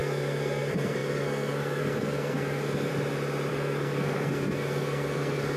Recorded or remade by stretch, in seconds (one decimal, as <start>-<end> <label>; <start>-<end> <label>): 0.0-2.9 remade; 2.9-3.5 recorded; 3.5-5.6 remade